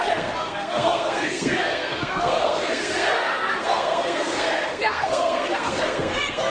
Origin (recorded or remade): remade